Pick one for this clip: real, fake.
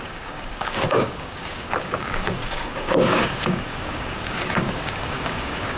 fake